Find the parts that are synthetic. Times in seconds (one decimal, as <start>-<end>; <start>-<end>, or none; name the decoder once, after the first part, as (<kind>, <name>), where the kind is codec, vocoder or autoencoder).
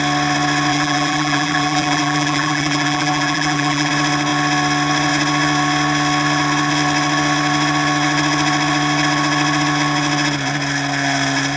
0.7-3.9 (vocoder, BigVGAN v2)